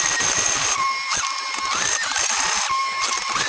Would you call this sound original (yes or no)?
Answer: yes